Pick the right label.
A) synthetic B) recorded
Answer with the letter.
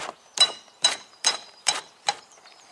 A